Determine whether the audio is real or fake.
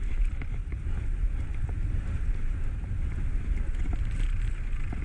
real